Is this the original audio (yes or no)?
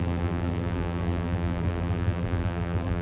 no